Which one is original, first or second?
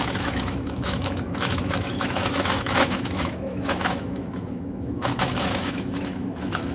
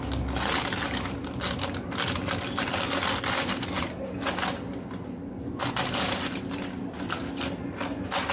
second